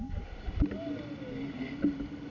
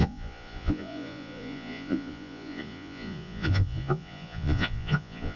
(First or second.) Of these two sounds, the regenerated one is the second